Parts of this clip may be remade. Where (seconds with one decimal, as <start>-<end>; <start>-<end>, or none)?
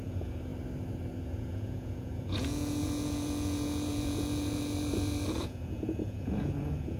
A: 0.0-0.5; 1.2-7.0